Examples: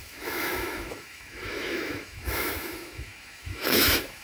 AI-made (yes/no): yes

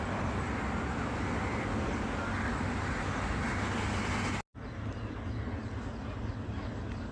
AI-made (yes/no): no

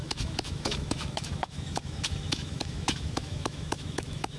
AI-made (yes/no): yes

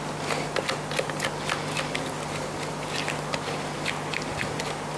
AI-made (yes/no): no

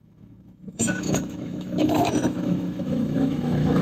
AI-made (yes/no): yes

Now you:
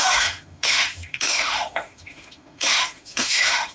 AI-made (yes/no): yes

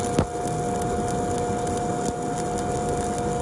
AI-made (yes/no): no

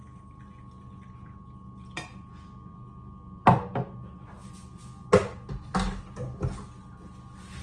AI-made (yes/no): no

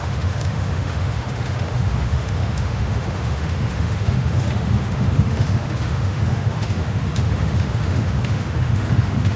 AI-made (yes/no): yes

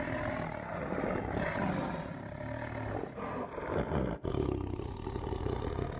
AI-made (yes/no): no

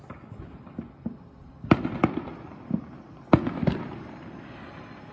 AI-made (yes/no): no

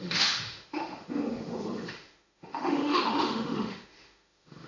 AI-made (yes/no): yes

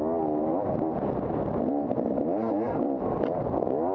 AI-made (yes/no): no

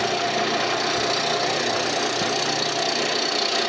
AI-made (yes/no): no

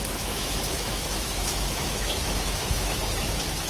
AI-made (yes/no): yes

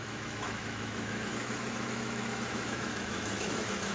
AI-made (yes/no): yes